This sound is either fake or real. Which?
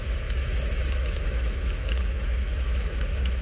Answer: fake